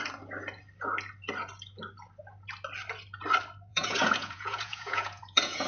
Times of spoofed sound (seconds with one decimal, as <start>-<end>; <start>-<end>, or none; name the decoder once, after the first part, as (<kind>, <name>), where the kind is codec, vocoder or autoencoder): 3.7-5.7 (vocoder, Vocos)